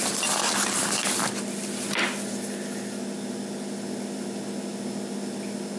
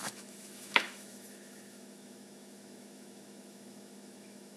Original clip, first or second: first